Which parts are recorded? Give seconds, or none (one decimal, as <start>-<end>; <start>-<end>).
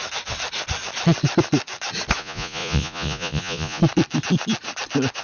0.0-2.2; 3.8-5.2